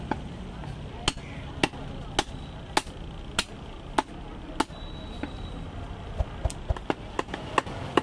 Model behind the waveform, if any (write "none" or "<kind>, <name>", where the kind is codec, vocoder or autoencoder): none